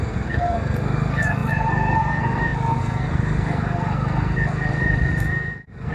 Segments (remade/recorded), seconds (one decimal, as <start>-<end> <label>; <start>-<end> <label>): 0.0-5.9 remade

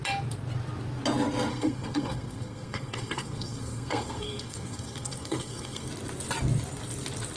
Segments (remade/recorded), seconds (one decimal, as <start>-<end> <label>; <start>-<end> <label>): 0.0-1.5 recorded; 1.5-5.9 remade; 5.9-7.4 recorded

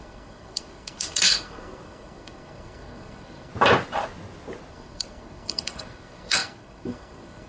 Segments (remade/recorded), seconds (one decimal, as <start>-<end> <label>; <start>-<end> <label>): 0.0-3.5 remade; 3.5-4.7 recorded; 4.7-7.5 remade